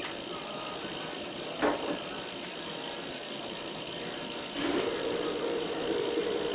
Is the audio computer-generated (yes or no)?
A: no